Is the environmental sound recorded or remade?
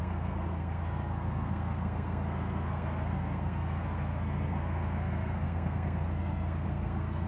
remade